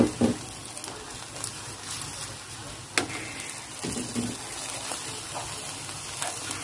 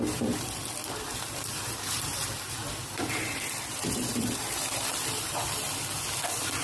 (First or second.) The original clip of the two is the first